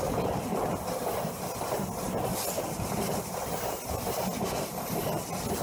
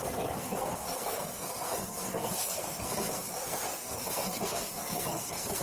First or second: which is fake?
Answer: second